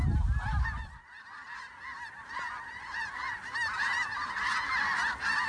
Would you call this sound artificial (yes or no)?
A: no